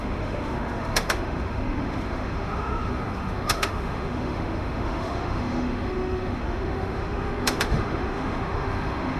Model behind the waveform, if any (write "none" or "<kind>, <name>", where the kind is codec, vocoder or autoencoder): autoencoder, DAC-VAE